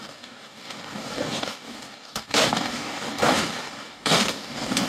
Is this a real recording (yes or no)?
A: no